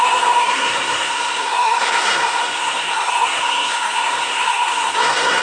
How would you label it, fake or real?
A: fake